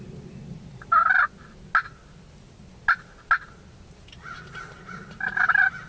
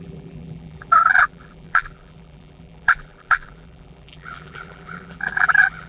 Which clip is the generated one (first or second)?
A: second